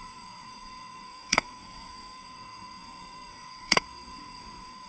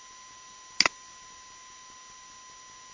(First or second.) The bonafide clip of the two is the second